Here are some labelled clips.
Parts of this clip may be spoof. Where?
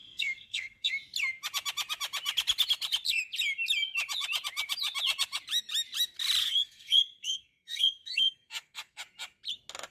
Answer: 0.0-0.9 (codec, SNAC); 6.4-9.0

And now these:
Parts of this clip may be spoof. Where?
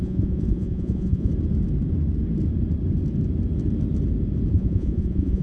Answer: 0.0-1.3 (vocoder, Vocos); 4.5-5.4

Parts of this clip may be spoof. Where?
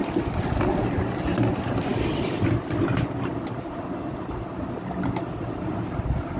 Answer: none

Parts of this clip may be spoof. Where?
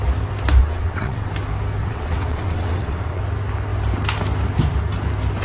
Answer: 0.6-1.3 (vocoder, WaveNeXt); 1.8-3.2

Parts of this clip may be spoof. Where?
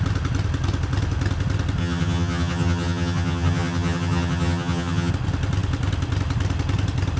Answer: 1.8-5.1 (vocoder, HiFi-GAN)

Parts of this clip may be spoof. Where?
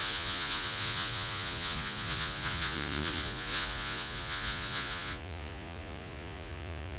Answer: 0.0-7.0 (vocoder, Vocos)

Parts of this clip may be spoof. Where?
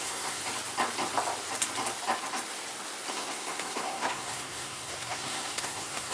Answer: 0.0-0.4 (codec, SNAC); 3.1-6.1